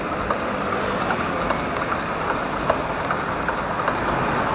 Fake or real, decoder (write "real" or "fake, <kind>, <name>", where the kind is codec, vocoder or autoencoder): real